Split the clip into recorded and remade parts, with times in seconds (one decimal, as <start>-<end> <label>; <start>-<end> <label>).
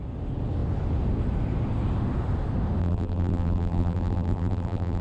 0.0-2.8 recorded; 2.8-5.0 remade